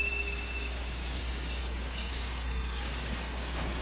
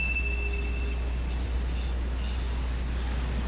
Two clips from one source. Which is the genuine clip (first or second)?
second